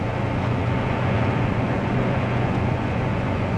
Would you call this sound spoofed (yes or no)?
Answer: yes